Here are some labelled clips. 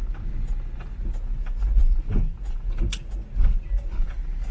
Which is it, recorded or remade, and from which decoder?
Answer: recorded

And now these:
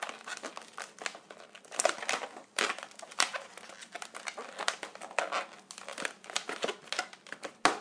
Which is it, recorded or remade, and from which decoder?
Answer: recorded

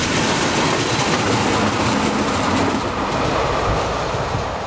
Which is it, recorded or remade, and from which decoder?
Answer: recorded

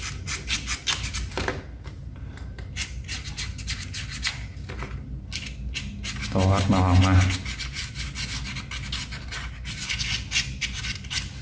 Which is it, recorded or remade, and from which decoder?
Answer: recorded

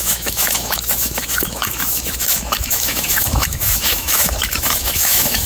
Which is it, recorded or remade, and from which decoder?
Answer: remade, autoencoder, DAC-VAE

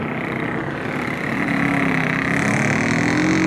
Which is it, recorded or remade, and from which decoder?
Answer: recorded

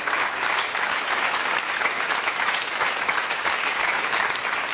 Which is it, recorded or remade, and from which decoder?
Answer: remade, autoencoder, DAC-VAE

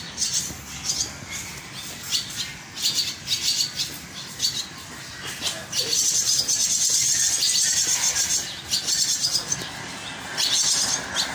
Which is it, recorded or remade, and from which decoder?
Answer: recorded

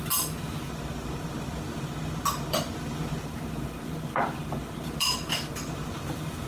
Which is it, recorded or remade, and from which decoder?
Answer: recorded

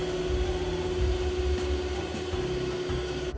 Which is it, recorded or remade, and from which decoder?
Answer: recorded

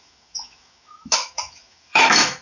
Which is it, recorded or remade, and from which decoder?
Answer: remade, autoencoder, DAC-VAE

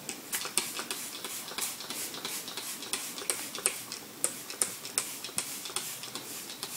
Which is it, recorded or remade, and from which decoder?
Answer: recorded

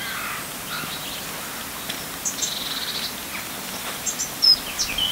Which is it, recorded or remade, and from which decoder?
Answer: recorded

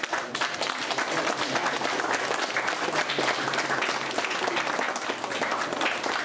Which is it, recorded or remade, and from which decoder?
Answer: recorded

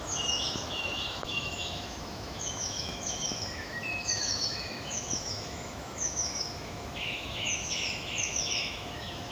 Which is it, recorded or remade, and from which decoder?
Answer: remade, autoencoder, DAC-VAE